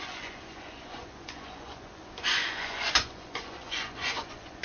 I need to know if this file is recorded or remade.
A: remade